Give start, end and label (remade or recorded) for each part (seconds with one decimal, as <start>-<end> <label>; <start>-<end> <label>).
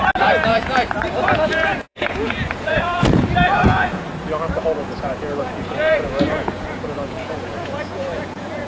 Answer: 0.0-0.5 recorded; 0.5-4.0 remade; 4.0-4.8 recorded; 4.8-8.7 remade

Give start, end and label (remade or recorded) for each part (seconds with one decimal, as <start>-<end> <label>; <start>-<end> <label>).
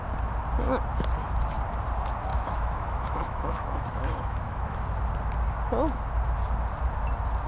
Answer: 0.0-2.3 recorded; 2.3-4.8 remade; 4.8-7.5 recorded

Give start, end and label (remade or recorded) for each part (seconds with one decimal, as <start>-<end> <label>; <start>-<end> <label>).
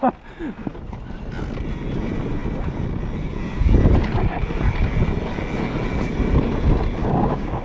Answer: 0.0-7.0 recorded; 7.0-7.6 remade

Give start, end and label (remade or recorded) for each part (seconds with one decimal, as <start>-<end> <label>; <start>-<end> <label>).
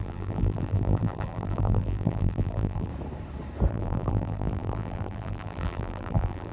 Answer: 0.0-2.9 remade; 2.9-3.7 recorded; 3.7-6.5 remade